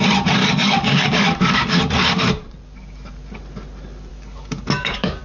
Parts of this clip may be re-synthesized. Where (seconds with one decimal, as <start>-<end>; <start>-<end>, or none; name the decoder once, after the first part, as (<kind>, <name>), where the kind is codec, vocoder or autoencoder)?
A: 0.4-1.8 (codec, DAC); 4.1-5.2